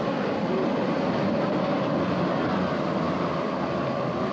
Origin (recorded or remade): recorded